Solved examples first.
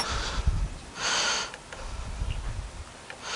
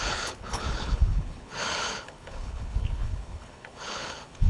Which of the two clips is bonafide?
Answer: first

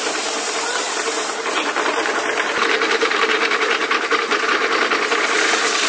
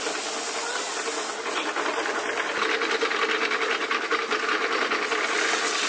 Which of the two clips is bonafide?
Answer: second